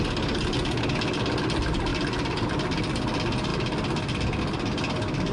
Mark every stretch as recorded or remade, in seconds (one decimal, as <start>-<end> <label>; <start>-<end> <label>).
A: 0.0-5.3 recorded